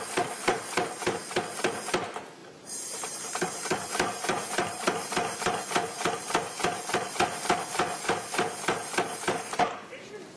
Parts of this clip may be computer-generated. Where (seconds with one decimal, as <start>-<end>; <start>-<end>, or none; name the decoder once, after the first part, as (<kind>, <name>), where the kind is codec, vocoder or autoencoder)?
0.4-1.4 (vocoder, BigVGAN v2); 2.4-7.1